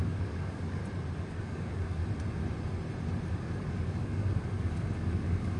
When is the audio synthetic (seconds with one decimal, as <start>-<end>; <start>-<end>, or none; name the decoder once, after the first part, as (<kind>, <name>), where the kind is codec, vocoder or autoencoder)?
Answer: 0.0-0.8 (codec, DAC); 1.3-2.0; 3.3-5.6